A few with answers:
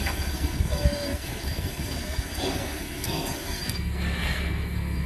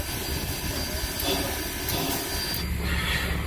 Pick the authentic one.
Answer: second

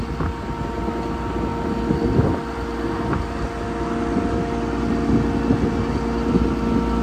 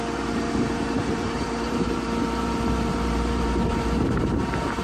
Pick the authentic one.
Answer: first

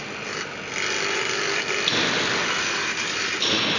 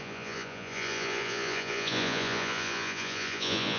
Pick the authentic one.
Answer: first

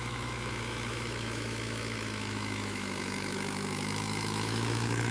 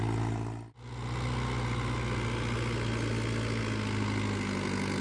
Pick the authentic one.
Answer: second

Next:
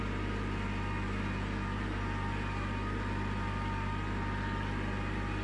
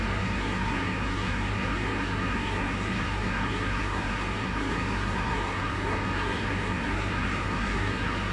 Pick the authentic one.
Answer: first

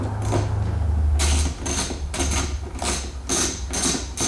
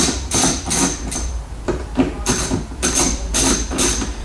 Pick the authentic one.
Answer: first